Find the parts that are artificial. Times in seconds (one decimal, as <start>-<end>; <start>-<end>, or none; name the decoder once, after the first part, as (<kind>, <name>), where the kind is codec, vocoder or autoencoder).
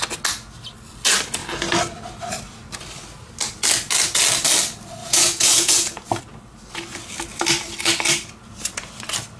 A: 5.0-6.2 (vocoder, Vocos)